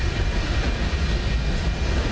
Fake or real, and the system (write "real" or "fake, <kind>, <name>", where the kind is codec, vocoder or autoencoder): real